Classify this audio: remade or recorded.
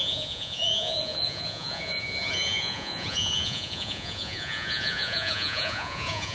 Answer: remade